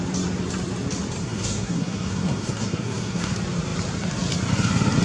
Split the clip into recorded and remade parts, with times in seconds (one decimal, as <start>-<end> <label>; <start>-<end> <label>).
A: 0.0-1.2 recorded; 1.2-3.3 remade; 3.3-5.0 recorded